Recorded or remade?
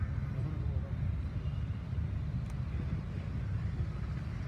recorded